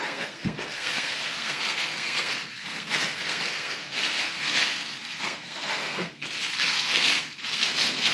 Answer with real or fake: fake